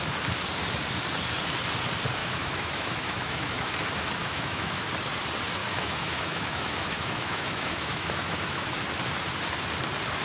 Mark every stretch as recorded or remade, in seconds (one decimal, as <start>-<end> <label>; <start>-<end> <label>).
0.0-2.2 recorded; 2.2-3.7 remade; 3.7-4.2 recorded; 4.2-4.8 remade; 4.8-5.6 recorded; 5.6-8.7 remade; 8.7-10.2 recorded